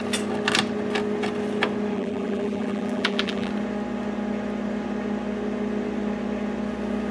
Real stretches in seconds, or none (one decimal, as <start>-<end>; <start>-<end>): 0.0-1.9; 3.5-7.1